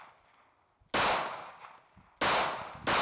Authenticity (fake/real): real